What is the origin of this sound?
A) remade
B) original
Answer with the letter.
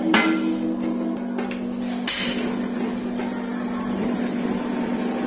B